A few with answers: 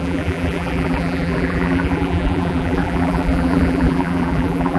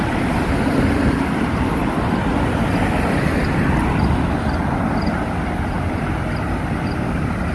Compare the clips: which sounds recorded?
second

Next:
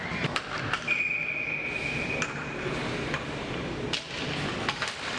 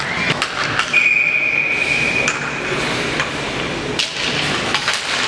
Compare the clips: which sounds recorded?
second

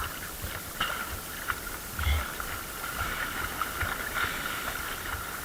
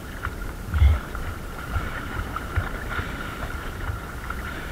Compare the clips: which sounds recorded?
first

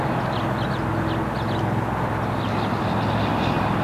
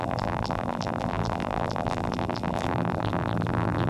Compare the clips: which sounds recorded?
first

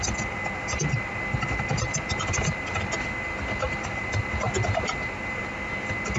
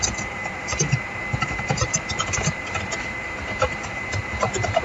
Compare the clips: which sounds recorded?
first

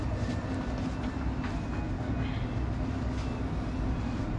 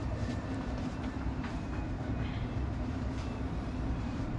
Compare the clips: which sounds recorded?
first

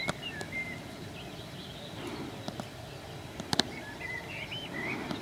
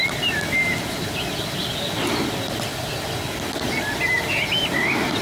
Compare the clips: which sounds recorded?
second